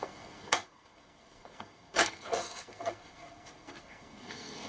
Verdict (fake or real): fake